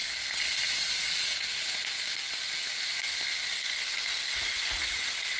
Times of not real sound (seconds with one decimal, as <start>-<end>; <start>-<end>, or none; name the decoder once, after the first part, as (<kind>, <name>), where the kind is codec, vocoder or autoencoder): 1.1-1.8 (vocoder, Vocos); 2.7-3.1; 4.3-5.4